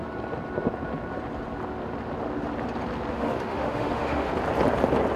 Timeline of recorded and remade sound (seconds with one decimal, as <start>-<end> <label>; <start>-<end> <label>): 0.0-3.1 recorded; 3.1-4.3 remade; 4.3-5.2 recorded